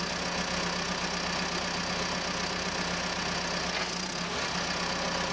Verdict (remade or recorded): recorded